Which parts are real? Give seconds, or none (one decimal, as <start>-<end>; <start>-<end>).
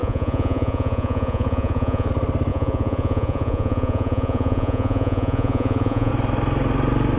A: 2.1-2.5; 6.1-7.2